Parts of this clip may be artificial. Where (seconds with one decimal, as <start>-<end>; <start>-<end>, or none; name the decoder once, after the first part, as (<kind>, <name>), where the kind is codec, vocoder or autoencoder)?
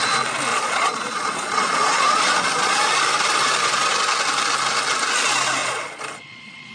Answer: 0.5-2.9 (vocoder, Vocos); 5.6-6.7